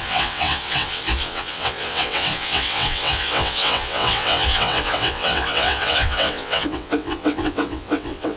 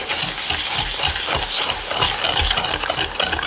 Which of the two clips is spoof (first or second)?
first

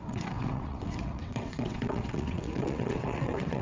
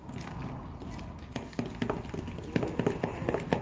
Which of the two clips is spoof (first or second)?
first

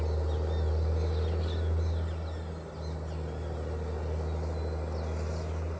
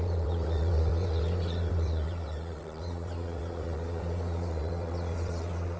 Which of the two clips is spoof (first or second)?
second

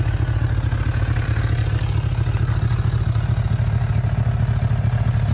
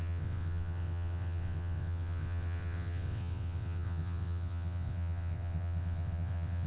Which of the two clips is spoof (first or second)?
second